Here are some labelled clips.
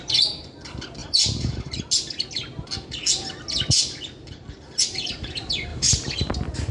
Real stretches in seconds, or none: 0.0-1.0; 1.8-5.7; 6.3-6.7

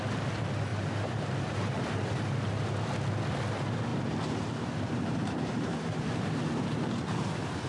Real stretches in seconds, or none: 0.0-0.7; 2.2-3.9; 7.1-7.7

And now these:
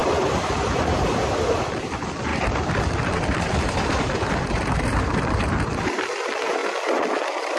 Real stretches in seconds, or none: 6.6-7.1